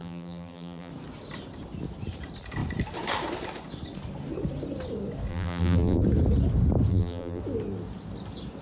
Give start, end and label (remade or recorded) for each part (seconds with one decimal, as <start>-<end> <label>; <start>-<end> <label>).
0.0-0.9 remade; 0.9-5.3 recorded; 5.3-6.0 remade; 6.0-6.9 recorded; 6.9-7.4 remade; 7.4-8.6 recorded